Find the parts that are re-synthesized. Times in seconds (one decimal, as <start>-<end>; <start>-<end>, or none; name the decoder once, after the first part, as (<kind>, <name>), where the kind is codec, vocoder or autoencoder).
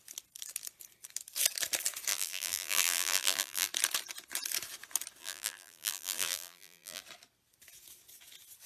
2.1-3.7 (vocoder, BigVGAN v2); 5.2-7.0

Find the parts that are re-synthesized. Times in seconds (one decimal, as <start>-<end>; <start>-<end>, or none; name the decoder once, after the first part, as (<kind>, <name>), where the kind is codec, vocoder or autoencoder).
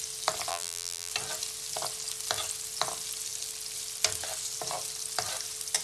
0.5-1.1 (vocoder, BigVGAN v2)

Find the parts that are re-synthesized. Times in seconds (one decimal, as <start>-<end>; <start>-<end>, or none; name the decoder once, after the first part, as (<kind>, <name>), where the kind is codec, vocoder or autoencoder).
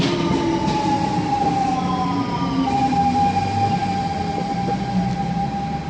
none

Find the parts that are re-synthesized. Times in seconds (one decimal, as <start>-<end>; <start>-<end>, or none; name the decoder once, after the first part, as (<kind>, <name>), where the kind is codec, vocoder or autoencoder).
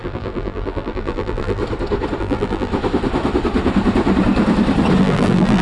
0.0-1.6 (vocoder, BigVGAN v2); 2.2-2.7; 5.0-5.6